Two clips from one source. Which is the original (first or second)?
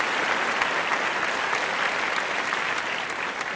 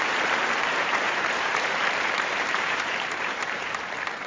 first